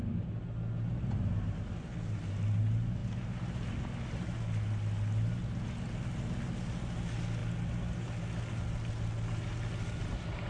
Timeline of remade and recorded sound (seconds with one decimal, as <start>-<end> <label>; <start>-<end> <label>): 0.0-10.5 recorded